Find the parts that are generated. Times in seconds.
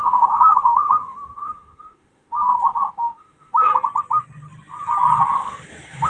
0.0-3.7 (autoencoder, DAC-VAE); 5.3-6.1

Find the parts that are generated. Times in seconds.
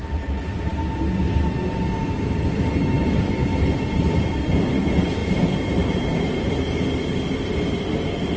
5.2-6.5 (vocoder, BigVGAN v2)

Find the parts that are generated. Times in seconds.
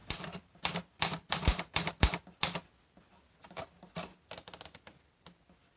0.0-2.0 (vocoder, BigVGAN v2)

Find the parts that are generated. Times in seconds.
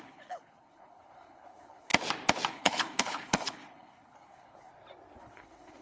0.0-1.9 (codec, HILCodec); 2.5-4.7; 5.2-5.8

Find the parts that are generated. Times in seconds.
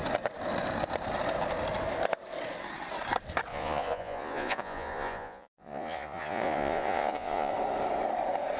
3.5-7.5 (vocoder, Vocos)